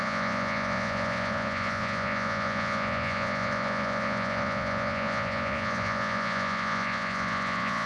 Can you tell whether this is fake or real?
fake